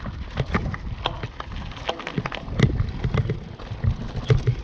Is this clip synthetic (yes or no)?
no